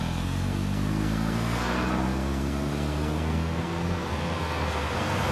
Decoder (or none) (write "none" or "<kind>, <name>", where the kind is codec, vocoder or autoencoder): codec, SNAC